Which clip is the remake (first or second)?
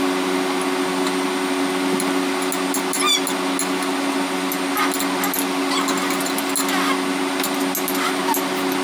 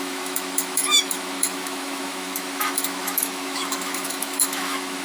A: second